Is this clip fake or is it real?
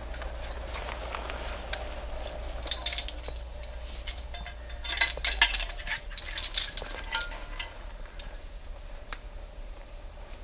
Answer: real